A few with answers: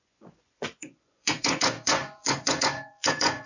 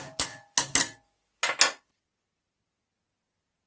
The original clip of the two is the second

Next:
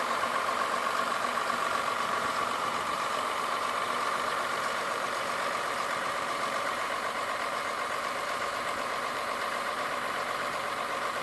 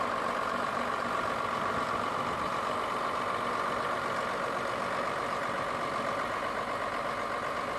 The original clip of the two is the second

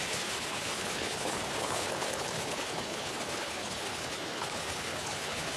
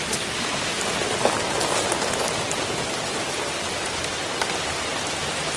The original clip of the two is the second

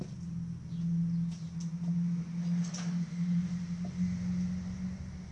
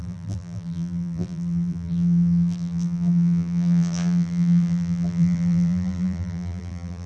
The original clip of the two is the first